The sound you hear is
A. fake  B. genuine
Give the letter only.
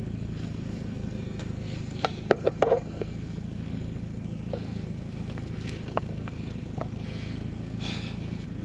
A